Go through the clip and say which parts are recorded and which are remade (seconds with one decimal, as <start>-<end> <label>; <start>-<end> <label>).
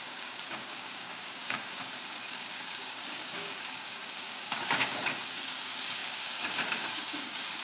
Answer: 0.0-7.6 remade